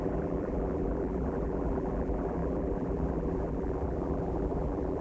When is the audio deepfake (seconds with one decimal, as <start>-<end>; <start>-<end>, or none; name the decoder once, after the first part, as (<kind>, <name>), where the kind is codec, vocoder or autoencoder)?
0.0-5.0 (vocoder, BigVGAN v2)